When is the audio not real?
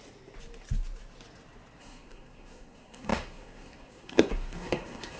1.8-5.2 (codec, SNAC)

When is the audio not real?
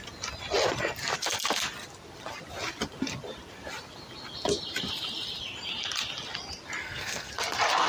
6.8-7.3 (codec, SNAC)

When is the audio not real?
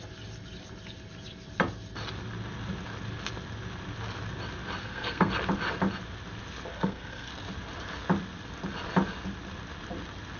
4.8-5.3 (codec, SNAC); 6.7-7.3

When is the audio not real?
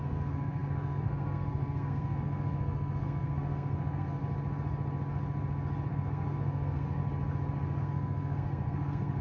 0.0-4.2 (codec, SNAC); 5.9-7.0; 7.8-9.2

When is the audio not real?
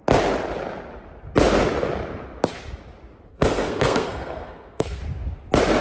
3.3-5.0 (codec, SNAC)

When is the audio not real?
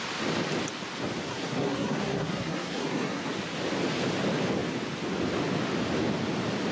1.3-3.3 (codec, SNAC)